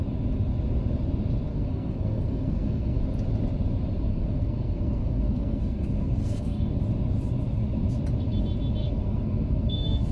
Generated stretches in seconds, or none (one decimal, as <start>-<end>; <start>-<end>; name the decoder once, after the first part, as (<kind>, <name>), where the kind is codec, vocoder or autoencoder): 1.5-3.0 (codec, SNAC); 4.1-6.8; 8.8-10.1